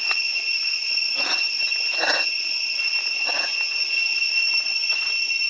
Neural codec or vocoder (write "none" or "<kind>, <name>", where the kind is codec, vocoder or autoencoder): none